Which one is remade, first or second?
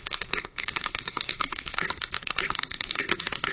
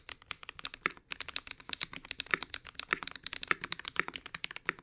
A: first